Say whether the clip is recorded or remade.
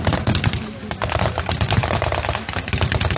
recorded